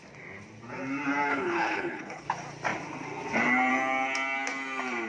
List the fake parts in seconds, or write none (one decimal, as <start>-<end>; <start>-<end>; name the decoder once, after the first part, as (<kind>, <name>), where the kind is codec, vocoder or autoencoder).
1.3-2.3 (codec, HILCodec)